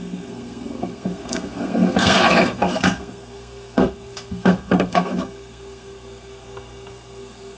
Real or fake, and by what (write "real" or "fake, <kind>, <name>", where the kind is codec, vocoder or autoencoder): fake, codec, SNAC